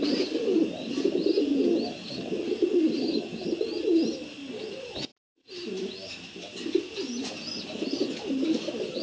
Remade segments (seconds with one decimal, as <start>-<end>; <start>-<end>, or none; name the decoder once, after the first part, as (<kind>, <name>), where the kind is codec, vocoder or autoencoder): none